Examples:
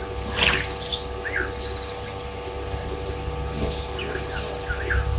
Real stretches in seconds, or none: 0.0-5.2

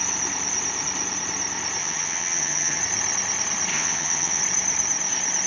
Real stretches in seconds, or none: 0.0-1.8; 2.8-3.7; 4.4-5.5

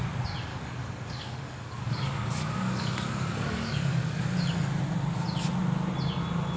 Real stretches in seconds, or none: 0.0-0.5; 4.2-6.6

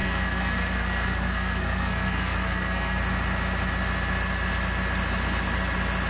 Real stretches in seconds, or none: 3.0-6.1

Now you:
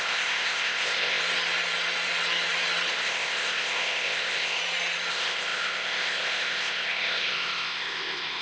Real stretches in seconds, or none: 1.2-2.9; 4.6-5.1

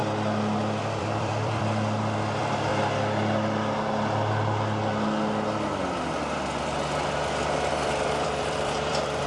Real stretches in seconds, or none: 0.0-1.0; 2.7-7.7